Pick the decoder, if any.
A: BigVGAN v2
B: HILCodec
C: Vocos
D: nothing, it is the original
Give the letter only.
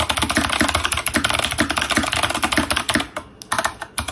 D